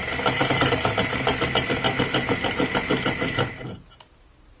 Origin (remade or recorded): recorded